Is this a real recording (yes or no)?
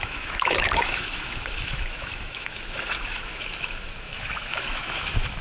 no